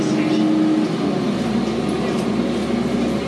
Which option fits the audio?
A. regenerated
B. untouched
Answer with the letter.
B